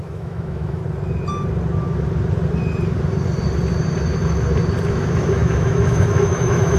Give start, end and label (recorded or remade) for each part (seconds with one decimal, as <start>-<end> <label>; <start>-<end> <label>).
0.0-0.8 remade; 0.8-4.9 recorded; 4.9-6.8 remade